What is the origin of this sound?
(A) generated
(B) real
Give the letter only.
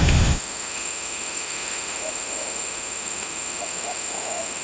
A